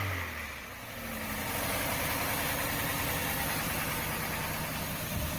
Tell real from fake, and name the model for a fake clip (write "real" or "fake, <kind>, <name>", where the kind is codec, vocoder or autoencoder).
real